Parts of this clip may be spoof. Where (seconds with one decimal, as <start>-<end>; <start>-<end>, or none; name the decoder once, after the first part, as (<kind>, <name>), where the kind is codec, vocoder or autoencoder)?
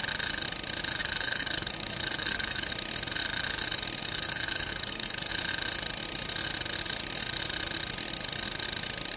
1.0-2.7 (codec, DAC); 4.0-5.3